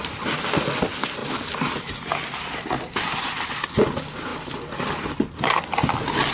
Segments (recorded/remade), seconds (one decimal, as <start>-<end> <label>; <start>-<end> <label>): 0.0-6.3 recorded